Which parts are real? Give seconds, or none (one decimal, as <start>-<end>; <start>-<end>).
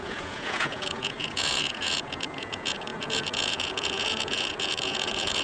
none